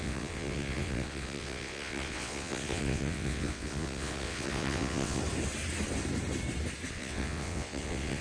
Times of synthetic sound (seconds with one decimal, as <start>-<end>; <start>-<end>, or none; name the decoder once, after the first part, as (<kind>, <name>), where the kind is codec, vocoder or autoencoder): 0.0-5.2 (vocoder, WaveNeXt); 6.9-8.2